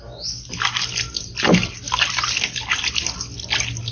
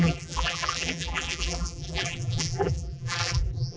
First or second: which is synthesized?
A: second